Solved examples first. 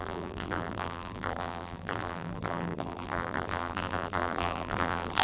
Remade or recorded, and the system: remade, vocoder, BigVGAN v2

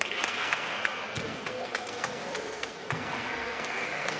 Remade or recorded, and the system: remade, codec, SNAC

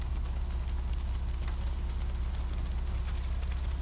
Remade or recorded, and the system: recorded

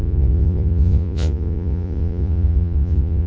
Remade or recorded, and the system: remade, vocoder, Vocos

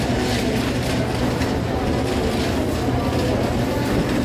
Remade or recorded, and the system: recorded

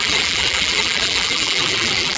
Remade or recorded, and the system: remade, vocoder, BigVGAN v2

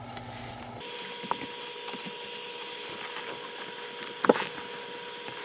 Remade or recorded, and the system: recorded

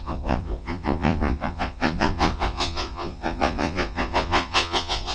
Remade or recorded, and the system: remade, vocoder, Vocos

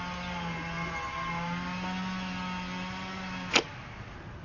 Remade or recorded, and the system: recorded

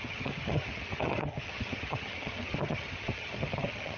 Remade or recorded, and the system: remade, vocoder, HiFi-GAN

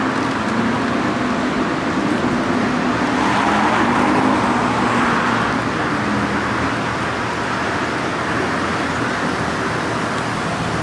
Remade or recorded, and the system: recorded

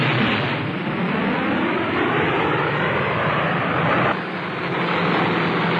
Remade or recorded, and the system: recorded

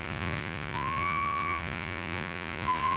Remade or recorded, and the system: remade, vocoder, Vocos